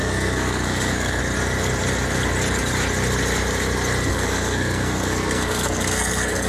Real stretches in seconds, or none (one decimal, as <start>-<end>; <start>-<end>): 1.2-4.1